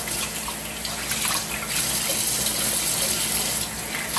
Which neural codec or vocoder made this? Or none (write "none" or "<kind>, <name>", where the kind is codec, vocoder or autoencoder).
none